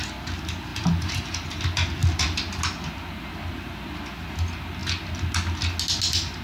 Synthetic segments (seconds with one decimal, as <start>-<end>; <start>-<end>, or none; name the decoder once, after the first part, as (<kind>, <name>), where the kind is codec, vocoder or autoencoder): 0.7-1.6 (vocoder, BigVGAN v2)